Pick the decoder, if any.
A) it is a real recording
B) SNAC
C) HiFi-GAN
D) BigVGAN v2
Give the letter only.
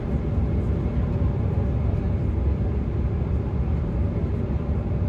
A